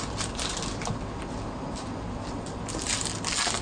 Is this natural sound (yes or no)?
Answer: yes